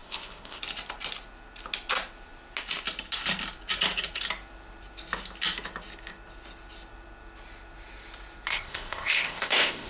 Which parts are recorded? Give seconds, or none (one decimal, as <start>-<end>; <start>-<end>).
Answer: 0.6-8.5